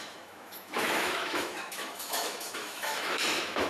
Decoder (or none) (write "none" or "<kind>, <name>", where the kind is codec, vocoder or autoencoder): autoencoder, DAC-VAE